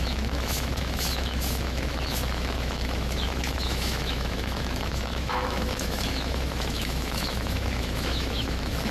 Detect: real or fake fake